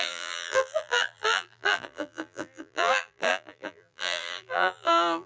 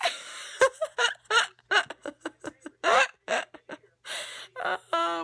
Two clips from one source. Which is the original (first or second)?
second